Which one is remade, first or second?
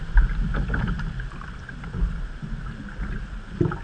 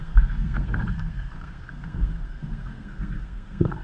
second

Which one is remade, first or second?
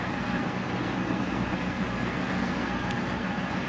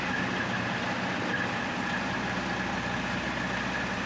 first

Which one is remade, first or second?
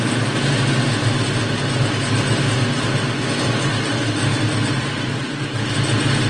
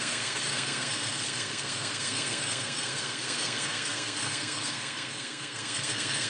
second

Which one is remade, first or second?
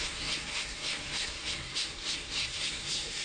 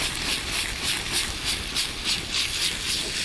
first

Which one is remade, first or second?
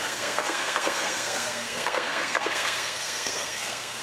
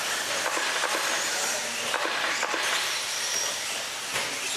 first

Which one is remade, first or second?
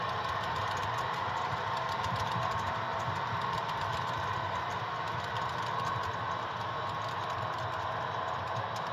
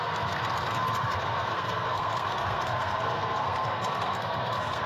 second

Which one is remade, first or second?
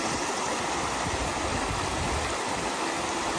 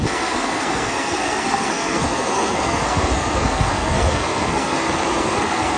second